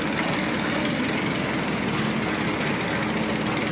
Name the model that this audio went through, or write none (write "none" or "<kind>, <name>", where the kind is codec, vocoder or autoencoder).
none